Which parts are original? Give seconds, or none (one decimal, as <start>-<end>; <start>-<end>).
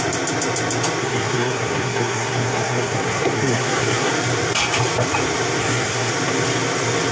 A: 0.0-1.0; 4.1-5.6; 6.1-7.1